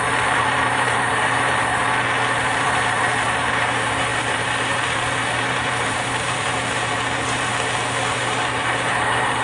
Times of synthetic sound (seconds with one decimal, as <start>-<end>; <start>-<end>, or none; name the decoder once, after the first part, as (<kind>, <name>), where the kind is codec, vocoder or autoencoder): 0.0-1.8 (vocoder, BigVGAN v2); 2.4-7.5; 8.1-9.4